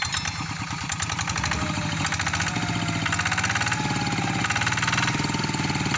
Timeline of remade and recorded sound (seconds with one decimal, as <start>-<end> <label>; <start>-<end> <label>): 0.0-6.0 recorded